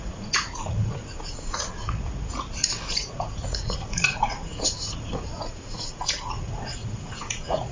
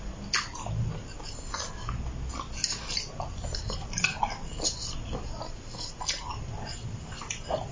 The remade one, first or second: first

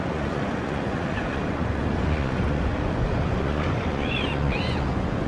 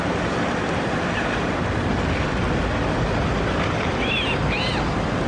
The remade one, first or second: first